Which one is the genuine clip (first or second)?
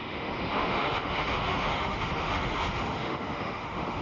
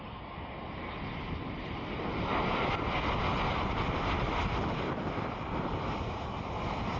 second